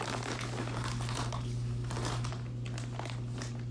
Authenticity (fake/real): real